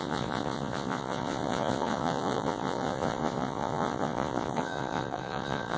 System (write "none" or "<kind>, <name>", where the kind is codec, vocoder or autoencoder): vocoder, Vocos